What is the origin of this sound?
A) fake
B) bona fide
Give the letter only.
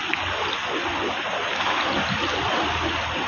B